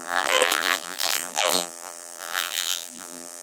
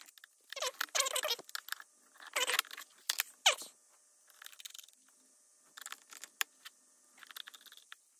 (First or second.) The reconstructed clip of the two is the first